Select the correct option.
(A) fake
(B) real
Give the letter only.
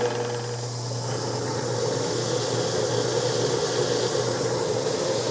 B